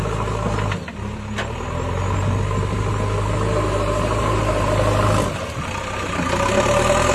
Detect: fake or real real